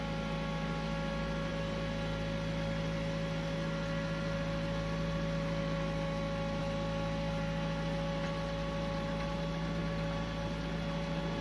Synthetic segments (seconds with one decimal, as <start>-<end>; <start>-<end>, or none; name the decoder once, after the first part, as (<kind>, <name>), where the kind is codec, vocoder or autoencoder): none